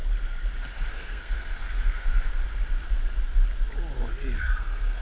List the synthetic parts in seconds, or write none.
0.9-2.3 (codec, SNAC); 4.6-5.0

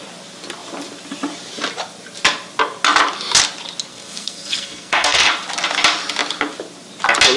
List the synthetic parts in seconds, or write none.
3.9-5.3 (codec, SNAC)

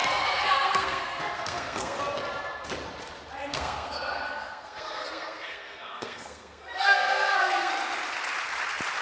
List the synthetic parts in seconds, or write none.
0.0-2.0 (codec, SNAC); 3.5-7.7

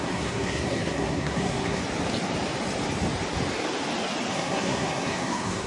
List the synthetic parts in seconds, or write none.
0.0-1.8 (codec, SNAC); 4.3-5.7

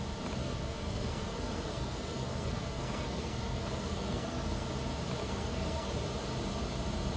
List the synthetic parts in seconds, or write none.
0.4-4.7 (codec, SNAC); 5.2-5.9

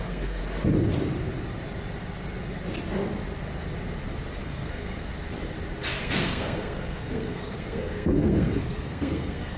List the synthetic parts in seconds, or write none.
0.0-0.4 (codec, SNAC); 4.4-5.1; 6.0-9.6

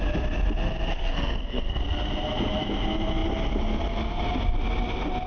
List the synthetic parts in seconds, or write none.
0.9-1.8 (codec, SNAC)